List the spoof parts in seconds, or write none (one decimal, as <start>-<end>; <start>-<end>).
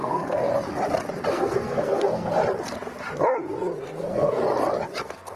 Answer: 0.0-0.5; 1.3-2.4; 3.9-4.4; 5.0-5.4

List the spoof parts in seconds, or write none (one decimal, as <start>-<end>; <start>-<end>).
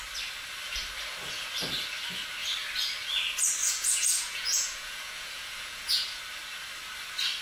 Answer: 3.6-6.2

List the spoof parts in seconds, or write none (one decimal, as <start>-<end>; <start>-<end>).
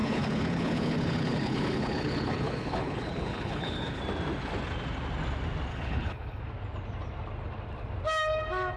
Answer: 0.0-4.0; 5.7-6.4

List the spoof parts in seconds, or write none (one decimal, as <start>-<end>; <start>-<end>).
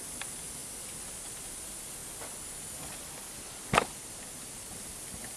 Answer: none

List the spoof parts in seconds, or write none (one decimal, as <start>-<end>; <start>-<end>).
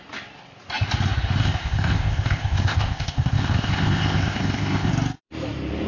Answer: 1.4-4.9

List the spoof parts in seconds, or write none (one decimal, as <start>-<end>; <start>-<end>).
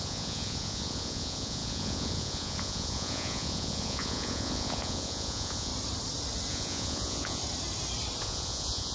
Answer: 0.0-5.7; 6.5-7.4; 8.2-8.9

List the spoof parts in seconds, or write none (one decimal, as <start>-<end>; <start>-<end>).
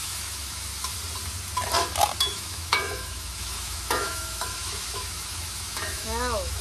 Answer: 0.0-0.7; 2.2-6.6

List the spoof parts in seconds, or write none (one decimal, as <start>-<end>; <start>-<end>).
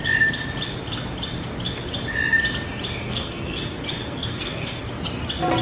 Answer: 3.0-3.6; 4.0-4.8